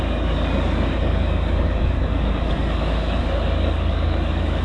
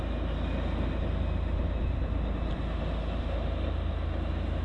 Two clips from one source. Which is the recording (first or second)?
second